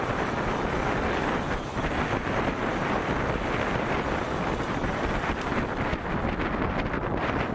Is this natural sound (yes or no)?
no